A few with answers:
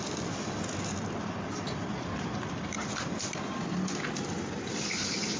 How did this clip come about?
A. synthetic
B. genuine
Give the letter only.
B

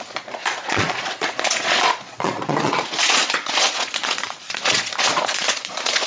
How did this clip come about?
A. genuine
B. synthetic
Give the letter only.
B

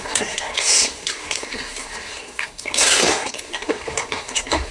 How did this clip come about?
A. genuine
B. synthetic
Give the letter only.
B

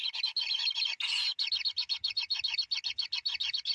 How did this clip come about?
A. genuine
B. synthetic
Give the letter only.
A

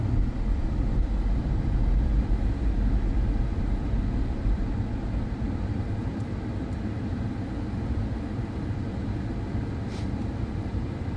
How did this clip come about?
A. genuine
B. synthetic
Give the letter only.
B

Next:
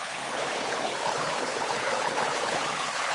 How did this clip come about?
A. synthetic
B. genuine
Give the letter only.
A